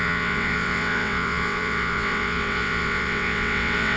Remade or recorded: remade